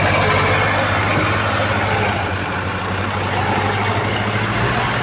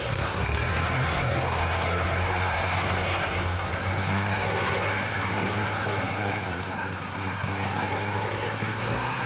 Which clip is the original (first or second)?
first